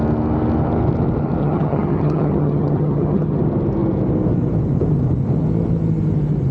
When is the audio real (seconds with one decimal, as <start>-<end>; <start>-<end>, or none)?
0.0-1.4; 3.4-6.5